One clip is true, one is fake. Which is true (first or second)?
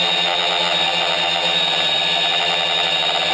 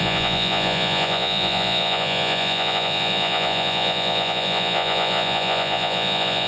first